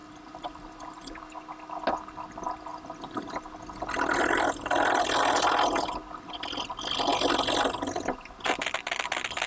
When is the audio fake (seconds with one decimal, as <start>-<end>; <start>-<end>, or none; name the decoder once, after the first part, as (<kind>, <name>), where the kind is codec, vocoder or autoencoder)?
0.0-1.2 (vocoder, BigVGAN v2)